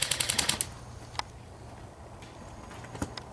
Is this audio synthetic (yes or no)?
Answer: no